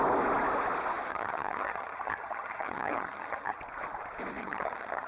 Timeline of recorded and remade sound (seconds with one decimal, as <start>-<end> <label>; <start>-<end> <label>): 0.0-1.1 recorded; 1.1-3.6 remade; 3.6-4.4 recorded; 4.4-5.1 remade